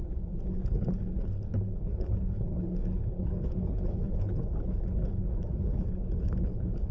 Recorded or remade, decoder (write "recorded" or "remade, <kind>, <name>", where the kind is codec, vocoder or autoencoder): remade, codec, HILCodec